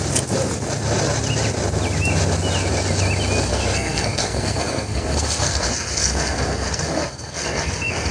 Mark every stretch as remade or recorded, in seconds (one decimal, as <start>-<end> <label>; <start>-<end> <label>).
0.0-3.5 recorded; 3.5-8.1 remade